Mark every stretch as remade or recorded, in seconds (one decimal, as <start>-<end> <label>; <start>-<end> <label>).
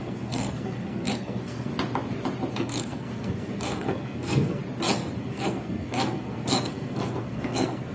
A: 0.0-1.7 remade; 1.7-2.5 recorded; 2.5-4.6 remade; 4.6-5.2 recorded; 5.2-7.9 remade